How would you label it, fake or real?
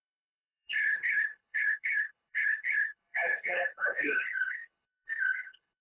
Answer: fake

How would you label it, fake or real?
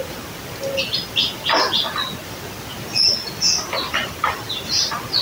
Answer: real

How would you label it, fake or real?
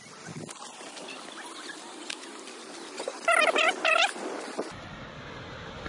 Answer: real